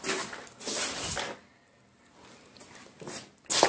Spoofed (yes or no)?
no